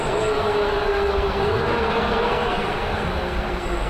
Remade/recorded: remade